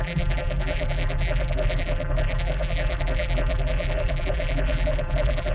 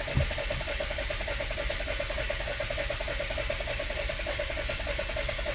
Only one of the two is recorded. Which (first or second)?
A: second